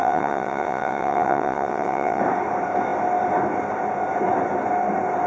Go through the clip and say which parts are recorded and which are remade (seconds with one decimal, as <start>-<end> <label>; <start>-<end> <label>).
0.0-2.2 remade; 2.2-5.3 recorded